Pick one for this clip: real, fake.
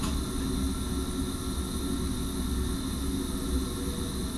real